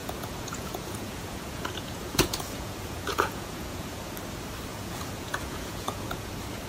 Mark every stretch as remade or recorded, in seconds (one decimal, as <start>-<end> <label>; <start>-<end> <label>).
0.0-4.0 remade; 4.0-4.7 recorded; 4.7-6.3 remade; 6.3-6.7 recorded